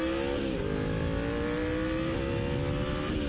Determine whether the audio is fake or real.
real